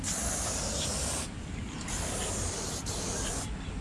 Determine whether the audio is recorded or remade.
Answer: recorded